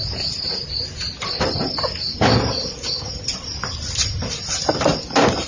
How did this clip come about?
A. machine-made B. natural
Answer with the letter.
B